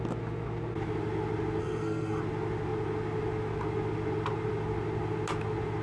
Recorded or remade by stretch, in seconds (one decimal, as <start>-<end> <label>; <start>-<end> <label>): 0.0-1.6 recorded; 1.6-2.2 remade; 2.2-5.8 recorded